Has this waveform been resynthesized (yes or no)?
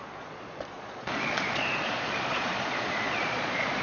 yes